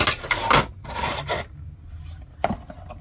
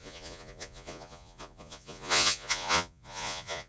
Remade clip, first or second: second